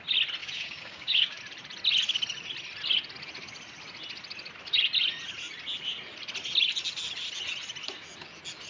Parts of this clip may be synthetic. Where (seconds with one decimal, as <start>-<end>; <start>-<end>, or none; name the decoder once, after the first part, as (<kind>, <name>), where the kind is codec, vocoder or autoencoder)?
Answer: 0.4-1.4 (codec, DAC)